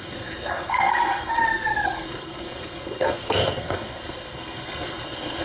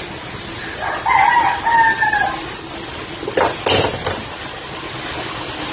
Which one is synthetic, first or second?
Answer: first